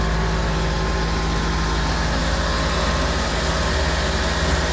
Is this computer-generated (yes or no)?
no